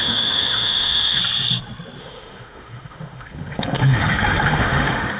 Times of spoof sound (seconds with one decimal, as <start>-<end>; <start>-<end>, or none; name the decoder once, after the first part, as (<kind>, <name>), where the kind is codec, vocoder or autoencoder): 0.0-1.2 (autoencoder, DAC-VAE); 2.0-5.2